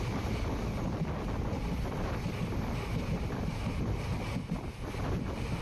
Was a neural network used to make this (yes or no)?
no